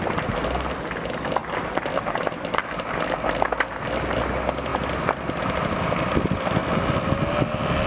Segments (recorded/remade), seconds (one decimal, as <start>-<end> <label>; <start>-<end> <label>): 0.0-7.9 recorded